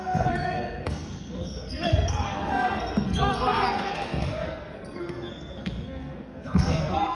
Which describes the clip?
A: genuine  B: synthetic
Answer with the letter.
B